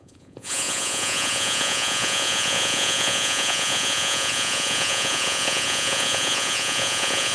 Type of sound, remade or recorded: remade